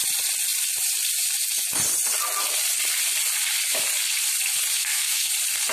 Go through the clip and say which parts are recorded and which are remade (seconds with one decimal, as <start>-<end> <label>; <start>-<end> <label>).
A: 0.0-4.8 recorded; 4.8-5.3 remade; 5.3-5.7 recorded